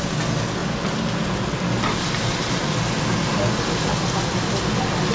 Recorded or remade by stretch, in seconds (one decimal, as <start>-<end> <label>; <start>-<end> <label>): 0.0-5.1 recorded